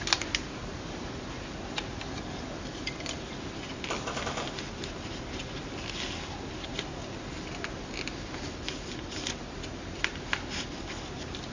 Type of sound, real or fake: real